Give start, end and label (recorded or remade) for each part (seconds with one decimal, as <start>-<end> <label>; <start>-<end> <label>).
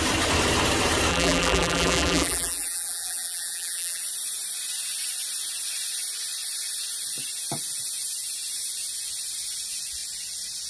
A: 0.0-1.1 recorded; 1.1-4.0 remade; 4.0-10.7 recorded